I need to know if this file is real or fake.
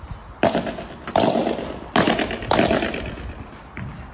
real